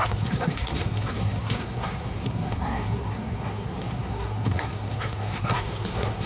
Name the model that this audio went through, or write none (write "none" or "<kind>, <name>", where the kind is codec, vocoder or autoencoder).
codec, SNAC